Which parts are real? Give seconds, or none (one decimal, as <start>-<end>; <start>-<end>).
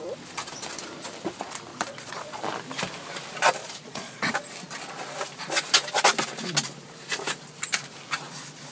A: 0.0-1.7; 2.4-3.6; 4.3-8.7